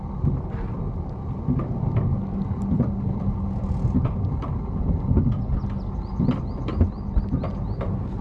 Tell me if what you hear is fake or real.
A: real